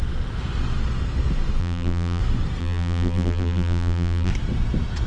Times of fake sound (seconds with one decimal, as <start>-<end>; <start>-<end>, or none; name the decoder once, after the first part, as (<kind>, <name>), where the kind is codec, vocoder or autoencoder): 1.6-2.2 (vocoder, BigVGAN v2); 2.6-4.3